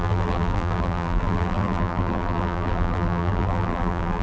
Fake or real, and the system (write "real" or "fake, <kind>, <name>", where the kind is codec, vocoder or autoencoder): fake, vocoder, BigVGAN v2